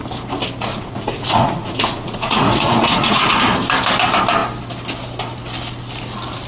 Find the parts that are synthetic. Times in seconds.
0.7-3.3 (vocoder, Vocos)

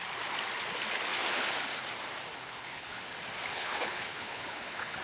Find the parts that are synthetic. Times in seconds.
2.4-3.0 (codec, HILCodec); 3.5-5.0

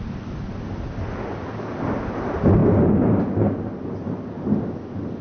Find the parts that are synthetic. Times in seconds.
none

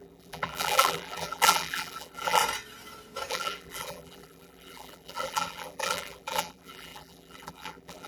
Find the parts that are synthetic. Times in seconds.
0.0-2.4 (vocoder, BigVGAN v2); 3.3-8.1

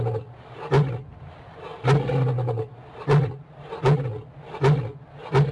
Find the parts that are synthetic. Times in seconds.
none

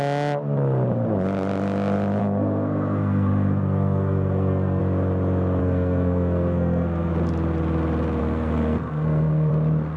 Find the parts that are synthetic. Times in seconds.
2.2-4.8 (codec, SNAC); 5.6-7.1; 8.2-9.5

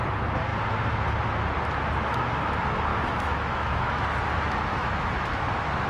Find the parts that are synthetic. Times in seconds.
2.9-4.0 (autoencoder, DAC-VAE); 4.7-5.4

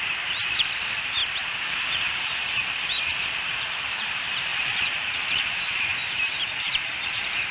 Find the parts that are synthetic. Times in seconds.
0.0-1.2 (vocoder, BigVGAN v2); 3.3-6.9